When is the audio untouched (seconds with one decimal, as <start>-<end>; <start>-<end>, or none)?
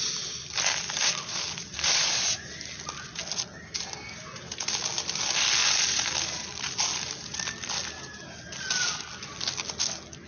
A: 0.0-10.3